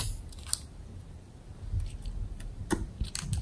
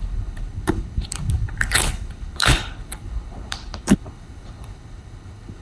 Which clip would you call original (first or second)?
first